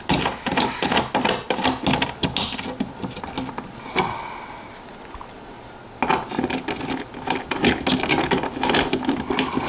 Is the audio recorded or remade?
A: recorded